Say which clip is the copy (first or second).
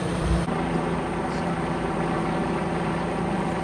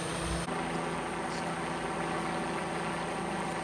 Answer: first